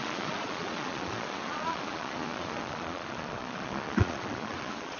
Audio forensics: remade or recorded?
remade